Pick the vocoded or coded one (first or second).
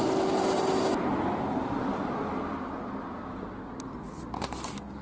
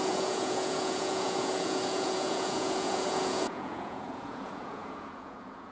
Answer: second